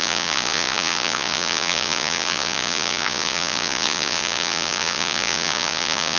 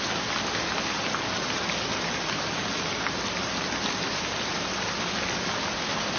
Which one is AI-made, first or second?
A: first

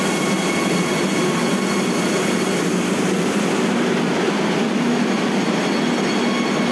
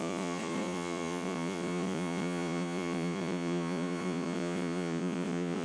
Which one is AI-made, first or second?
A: second